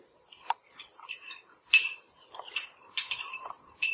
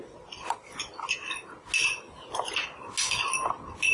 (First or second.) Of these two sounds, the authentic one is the second